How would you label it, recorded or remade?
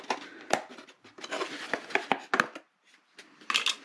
recorded